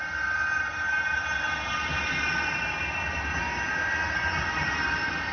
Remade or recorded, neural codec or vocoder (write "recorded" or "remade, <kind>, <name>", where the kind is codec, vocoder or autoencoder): recorded